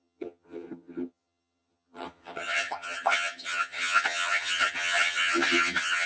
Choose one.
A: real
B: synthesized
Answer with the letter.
B